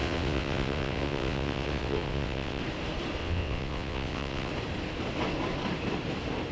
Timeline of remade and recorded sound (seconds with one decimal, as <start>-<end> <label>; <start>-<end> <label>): 0.0-2.6 remade; 2.6-3.2 recorded; 3.2-4.5 remade; 4.5-6.5 recorded